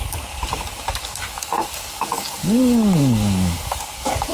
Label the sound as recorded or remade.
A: remade